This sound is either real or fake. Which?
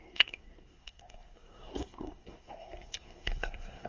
fake